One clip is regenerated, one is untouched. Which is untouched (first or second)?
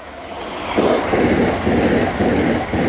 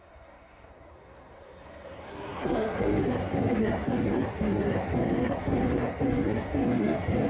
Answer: first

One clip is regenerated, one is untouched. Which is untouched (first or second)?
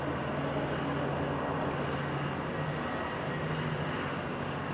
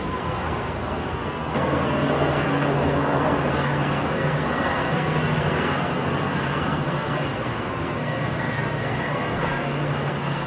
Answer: first